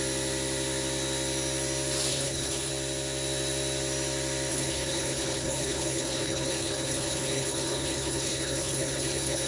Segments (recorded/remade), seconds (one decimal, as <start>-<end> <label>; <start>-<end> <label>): 0.0-2.1 recorded; 2.1-2.7 remade; 2.7-4.5 recorded; 4.5-9.5 remade